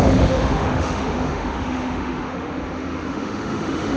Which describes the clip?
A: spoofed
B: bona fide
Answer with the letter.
A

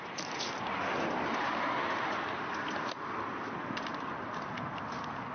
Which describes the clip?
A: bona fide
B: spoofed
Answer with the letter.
A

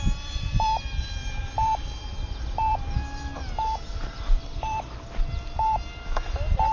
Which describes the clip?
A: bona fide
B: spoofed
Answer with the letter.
B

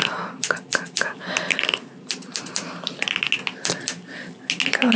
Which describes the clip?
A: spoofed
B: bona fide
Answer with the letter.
B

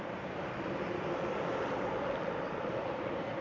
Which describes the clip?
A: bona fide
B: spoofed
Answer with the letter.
B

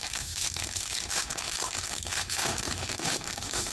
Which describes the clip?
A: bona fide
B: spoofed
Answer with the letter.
B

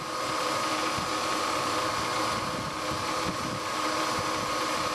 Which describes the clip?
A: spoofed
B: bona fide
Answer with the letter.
B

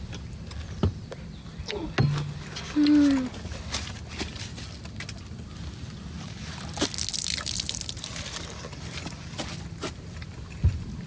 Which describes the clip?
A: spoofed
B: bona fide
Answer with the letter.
B